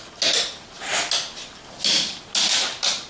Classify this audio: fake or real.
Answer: real